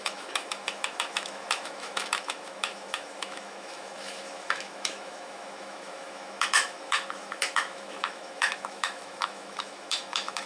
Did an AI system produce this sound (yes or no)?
yes